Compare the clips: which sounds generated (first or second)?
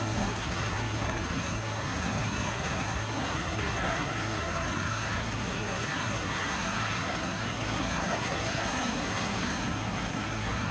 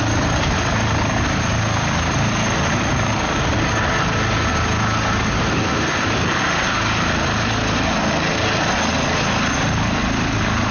first